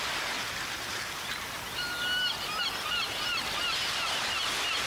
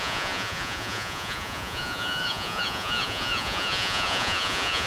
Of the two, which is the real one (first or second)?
first